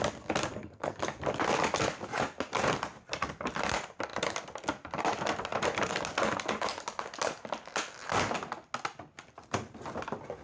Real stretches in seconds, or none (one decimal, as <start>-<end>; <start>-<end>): 0.0-0.5; 1.0-10.4